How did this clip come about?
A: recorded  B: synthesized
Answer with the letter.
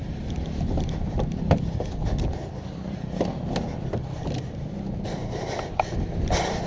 A